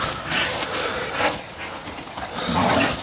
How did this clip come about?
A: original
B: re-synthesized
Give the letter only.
A